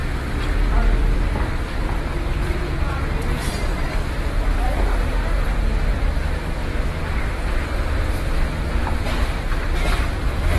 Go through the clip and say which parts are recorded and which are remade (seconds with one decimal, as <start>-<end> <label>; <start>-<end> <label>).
0.0-10.6 remade